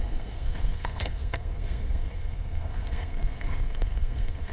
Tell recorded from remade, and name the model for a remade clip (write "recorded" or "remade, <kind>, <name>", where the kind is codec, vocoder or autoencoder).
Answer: remade, codec, SNAC